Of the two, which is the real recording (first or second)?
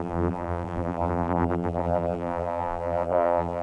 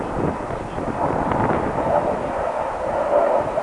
second